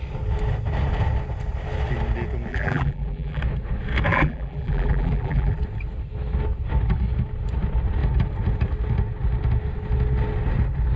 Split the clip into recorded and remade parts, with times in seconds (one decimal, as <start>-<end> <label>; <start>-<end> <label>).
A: 0.0-2.5 recorded; 2.5-3.4 remade; 3.4-4.1 recorded; 4.1-5.6 remade; 5.6-11.0 recorded